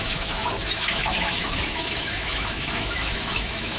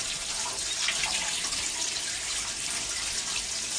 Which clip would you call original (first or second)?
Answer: second